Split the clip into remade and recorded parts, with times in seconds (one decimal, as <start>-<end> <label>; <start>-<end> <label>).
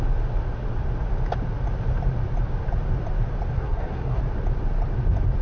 0.0-3.5 recorded; 3.5-4.2 remade; 4.2-5.4 recorded